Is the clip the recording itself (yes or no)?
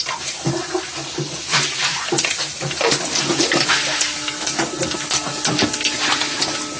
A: yes